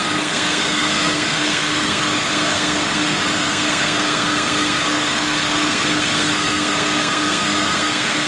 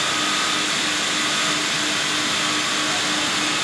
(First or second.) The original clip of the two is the second